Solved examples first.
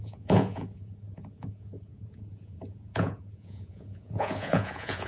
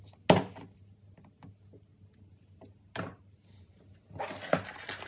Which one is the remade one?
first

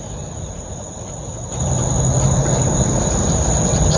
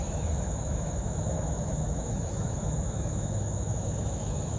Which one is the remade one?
second